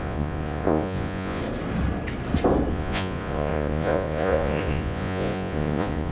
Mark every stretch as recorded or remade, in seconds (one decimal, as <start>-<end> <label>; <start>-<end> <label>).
0.0-1.4 remade; 1.4-2.7 recorded; 2.7-6.1 remade